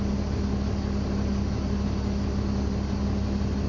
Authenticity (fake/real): real